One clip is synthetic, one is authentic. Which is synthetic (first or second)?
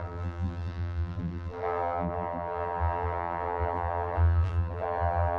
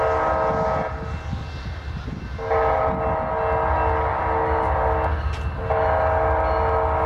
first